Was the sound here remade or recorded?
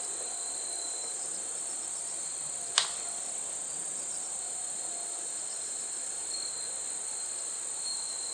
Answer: recorded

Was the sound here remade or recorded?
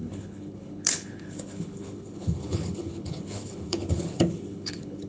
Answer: remade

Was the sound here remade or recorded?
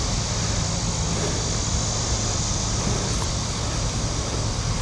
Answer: recorded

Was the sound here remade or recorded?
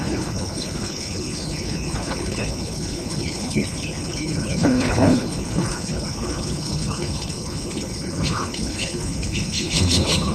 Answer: remade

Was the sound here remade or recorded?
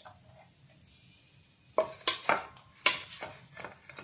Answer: recorded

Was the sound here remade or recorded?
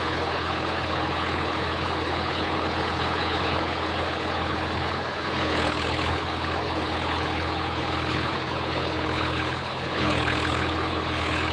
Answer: remade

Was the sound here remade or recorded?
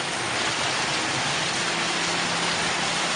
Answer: recorded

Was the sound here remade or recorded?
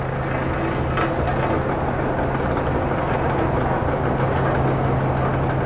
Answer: recorded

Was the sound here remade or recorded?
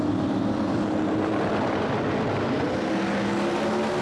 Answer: recorded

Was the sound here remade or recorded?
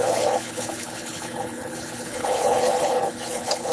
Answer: remade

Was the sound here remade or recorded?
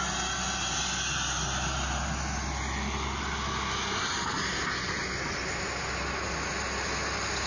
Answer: recorded